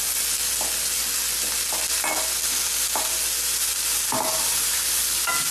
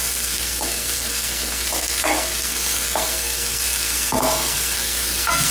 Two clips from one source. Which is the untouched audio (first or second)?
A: first